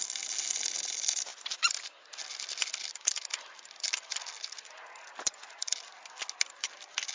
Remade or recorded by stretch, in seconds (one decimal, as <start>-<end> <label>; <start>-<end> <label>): 0.0-7.1 recorded